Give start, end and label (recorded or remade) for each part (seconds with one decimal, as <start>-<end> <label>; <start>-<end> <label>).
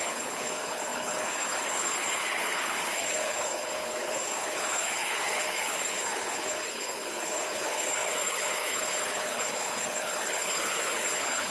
0.0-11.5 remade